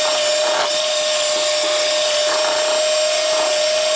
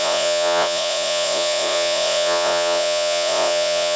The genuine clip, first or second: first